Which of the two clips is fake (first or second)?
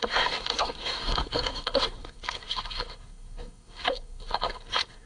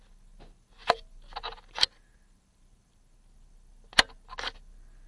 first